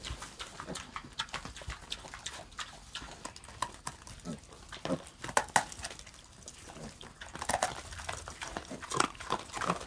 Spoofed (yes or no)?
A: no